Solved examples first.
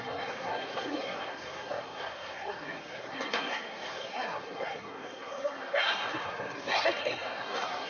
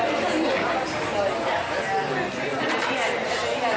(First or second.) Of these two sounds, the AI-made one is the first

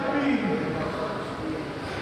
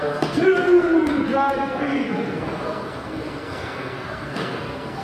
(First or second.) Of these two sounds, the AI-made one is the second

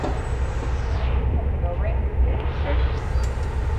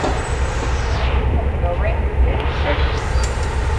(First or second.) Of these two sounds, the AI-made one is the second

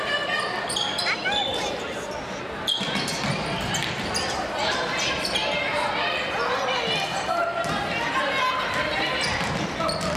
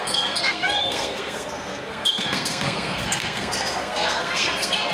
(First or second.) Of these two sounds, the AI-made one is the second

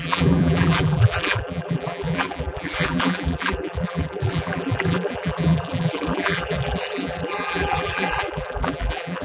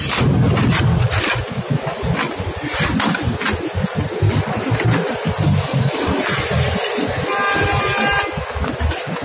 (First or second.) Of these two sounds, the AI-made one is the first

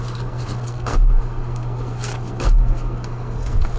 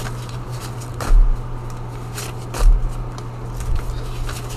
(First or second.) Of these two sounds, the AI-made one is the first